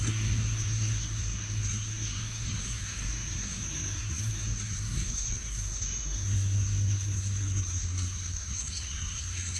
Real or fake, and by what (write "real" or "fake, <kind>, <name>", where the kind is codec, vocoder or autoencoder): fake, codec, SNAC